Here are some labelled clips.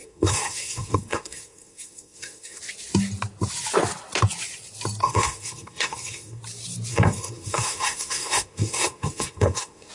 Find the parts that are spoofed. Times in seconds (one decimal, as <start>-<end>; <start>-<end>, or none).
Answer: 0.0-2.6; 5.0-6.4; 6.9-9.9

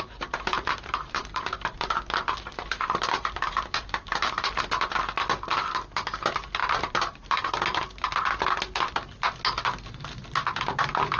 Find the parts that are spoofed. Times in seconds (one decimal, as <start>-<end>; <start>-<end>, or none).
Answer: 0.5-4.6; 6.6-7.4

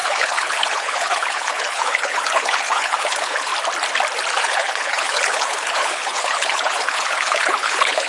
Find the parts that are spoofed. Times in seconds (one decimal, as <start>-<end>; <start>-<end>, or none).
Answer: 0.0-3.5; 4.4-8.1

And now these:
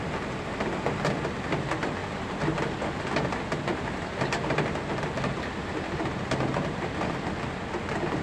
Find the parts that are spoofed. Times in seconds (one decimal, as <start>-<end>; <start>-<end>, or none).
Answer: none

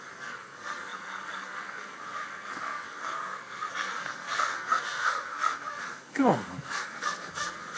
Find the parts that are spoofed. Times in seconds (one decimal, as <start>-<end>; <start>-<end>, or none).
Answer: 0.0-7.8